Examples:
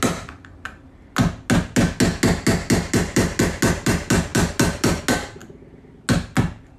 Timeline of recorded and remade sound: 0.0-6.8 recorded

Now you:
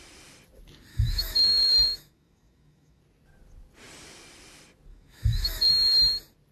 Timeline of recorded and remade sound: 0.0-0.9 recorded; 0.9-3.0 remade; 3.0-4.9 recorded; 4.9-5.7 remade; 5.7-6.5 recorded

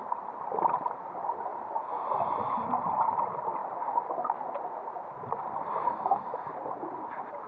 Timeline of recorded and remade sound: 0.0-1.5 recorded; 1.5-2.2 remade; 2.2-3.6 recorded; 3.6-7.5 remade

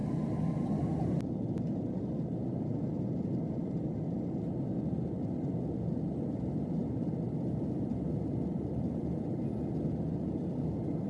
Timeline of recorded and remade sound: 0.0-6.8 recorded; 6.8-9.4 remade; 9.4-11.1 recorded

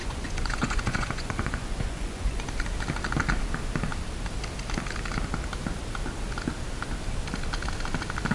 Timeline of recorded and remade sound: 0.0-2.4 remade; 2.4-8.3 recorded

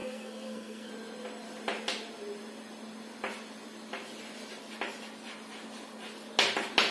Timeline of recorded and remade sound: 0.0-0.9 remade; 0.9-6.9 recorded

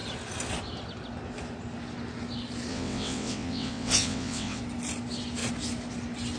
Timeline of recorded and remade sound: 0.0-2.7 recorded; 2.7-4.6 remade; 4.6-6.4 recorded

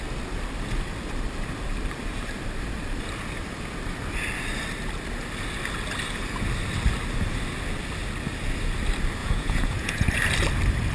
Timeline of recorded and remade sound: 0.0-9.2 recorded; 9.2-10.1 remade; 10.1-10.9 recorded